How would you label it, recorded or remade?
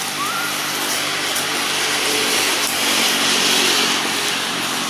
recorded